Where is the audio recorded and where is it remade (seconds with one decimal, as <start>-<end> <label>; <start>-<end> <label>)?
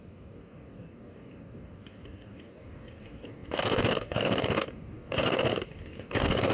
0.0-6.5 remade